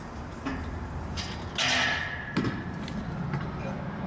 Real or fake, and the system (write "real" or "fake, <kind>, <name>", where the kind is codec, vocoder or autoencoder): real